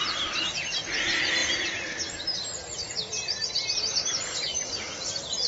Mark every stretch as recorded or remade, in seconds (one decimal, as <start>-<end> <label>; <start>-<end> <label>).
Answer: 0.0-5.5 recorded